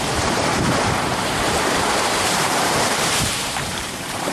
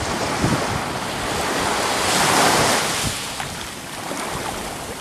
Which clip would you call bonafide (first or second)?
second